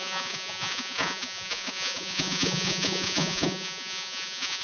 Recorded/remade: remade